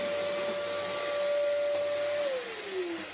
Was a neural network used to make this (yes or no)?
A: no